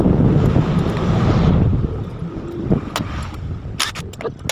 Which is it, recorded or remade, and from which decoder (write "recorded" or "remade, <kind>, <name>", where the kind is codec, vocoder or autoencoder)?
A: recorded